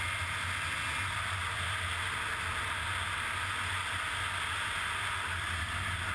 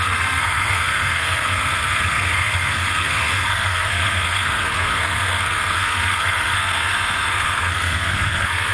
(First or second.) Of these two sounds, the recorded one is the first